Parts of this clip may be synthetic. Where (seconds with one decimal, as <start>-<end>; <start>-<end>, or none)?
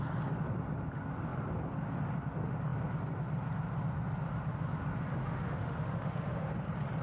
5.2-6.5